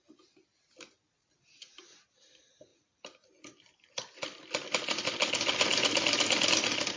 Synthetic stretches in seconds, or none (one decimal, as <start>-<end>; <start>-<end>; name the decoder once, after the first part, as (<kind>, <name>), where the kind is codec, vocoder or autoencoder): none

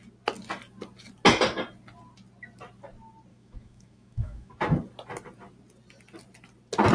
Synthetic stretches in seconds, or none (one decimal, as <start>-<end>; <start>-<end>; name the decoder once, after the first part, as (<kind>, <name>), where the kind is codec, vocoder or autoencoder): 3.3-4.5 (autoencoder, DAC-VAE)

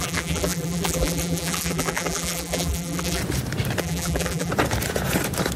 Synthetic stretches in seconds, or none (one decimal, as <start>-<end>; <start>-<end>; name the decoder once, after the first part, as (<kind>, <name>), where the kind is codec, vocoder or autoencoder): 0.0-3.2 (vocoder, BigVGAN v2); 3.8-4.5